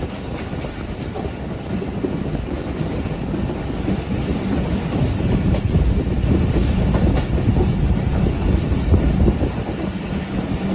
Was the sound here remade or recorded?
recorded